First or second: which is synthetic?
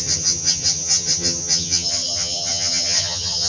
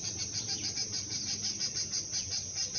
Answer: first